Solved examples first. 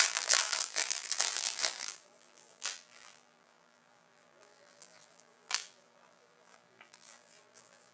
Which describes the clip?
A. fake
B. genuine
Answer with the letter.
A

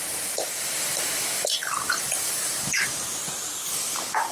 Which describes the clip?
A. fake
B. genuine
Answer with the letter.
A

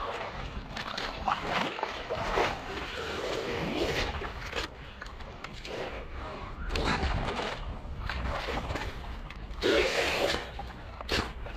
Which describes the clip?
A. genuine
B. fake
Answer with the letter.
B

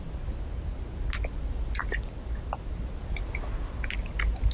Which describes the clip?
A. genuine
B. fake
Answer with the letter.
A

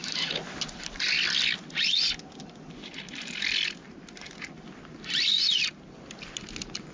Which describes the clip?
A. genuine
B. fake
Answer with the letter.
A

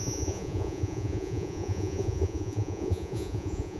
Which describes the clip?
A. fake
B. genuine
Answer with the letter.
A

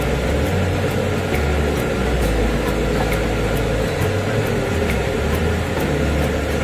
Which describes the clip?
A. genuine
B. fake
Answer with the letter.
A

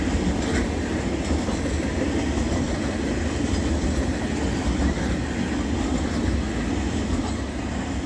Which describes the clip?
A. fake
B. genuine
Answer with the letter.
B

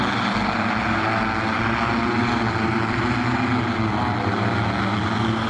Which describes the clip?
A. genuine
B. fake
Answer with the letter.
A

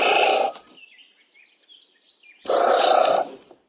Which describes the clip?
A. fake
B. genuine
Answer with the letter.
B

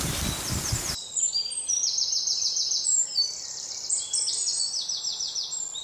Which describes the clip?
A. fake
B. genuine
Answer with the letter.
A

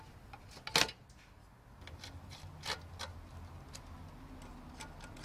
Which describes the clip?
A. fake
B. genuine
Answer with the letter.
B